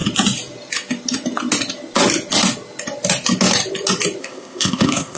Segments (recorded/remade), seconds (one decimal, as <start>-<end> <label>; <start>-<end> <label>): 0.0-4.2 recorded; 4.2-5.2 remade